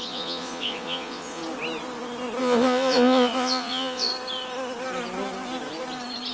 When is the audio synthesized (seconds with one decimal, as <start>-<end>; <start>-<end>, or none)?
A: 0.0-1.4; 2.4-4.1